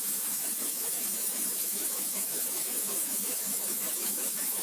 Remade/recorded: remade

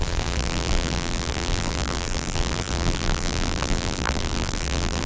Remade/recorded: remade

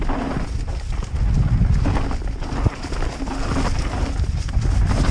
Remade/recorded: recorded